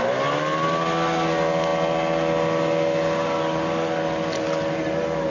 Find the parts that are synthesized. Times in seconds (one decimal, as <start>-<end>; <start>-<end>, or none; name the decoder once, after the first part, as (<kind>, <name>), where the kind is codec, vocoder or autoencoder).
none